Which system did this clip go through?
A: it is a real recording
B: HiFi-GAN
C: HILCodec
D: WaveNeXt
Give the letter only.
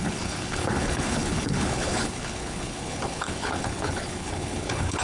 C